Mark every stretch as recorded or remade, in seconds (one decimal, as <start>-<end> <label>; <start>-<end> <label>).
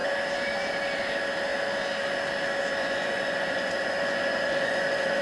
0.0-2.8 recorded; 2.8-5.2 remade